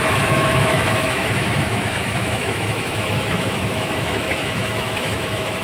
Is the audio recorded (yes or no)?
no